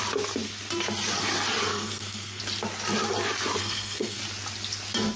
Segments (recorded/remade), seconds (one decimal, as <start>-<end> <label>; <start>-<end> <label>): 0.0-1.7 recorded; 1.7-2.4 remade; 2.4-3.6 recorded; 3.6-4.2 remade; 4.2-5.2 recorded